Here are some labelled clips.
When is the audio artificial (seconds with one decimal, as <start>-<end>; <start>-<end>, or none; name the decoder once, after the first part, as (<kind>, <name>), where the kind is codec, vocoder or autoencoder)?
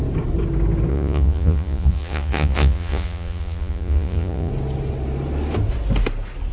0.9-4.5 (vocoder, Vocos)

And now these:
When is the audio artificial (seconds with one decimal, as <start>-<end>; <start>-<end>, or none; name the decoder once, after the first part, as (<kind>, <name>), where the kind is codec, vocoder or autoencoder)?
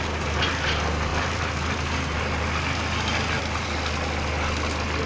none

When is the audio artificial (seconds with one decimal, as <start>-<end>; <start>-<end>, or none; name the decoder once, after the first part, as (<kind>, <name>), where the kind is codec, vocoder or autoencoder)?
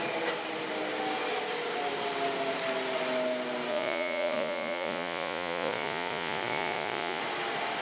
3.7-7.2 (vocoder, Vocos)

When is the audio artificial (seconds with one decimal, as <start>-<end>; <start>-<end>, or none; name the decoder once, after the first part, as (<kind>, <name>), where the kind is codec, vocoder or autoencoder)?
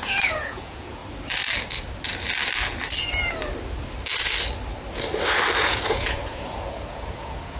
0.0-1.0 (vocoder, Vocos); 5.6-7.6